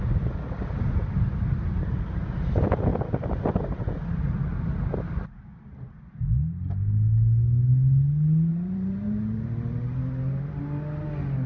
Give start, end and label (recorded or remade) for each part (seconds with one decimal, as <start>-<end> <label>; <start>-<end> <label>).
0.0-8.5 recorded; 8.5-10.6 remade; 10.6-11.5 recorded